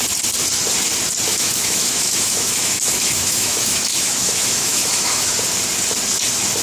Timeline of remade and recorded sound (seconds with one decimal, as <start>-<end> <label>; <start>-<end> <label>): 0.0-1.3 recorded; 1.3-5.3 remade; 5.3-6.6 recorded